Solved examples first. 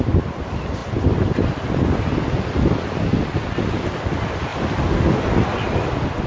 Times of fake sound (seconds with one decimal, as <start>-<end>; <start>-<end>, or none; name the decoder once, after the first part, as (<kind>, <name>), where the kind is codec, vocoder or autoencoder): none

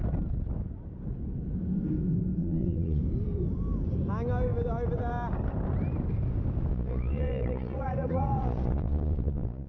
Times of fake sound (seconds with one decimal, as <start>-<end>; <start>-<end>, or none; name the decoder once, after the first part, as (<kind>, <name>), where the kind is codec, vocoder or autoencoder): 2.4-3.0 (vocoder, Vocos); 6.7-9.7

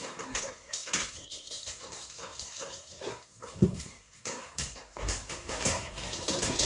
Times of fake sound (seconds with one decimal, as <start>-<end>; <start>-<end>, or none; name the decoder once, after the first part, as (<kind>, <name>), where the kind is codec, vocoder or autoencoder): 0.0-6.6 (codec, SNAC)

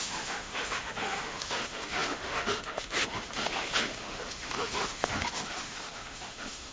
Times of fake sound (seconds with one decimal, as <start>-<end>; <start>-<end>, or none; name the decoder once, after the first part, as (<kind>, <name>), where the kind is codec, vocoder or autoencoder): 0.0-6.7 (autoencoder, DAC-VAE)

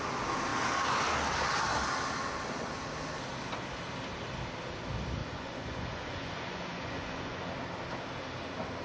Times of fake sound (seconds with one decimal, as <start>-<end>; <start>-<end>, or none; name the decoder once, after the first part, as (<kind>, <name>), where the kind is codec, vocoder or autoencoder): 5.2-7.4 (vocoder, Vocos)

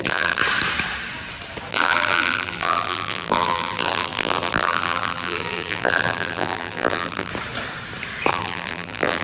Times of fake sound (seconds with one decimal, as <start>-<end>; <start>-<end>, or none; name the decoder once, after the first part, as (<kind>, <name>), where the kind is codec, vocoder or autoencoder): 0.0-0.4 (vocoder, BigVGAN v2); 1.7-7.3; 8.3-9.2